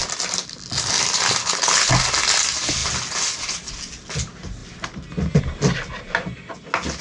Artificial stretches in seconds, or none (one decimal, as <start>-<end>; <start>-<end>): 1.4-1.9